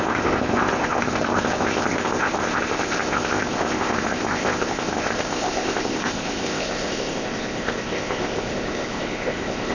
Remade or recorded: remade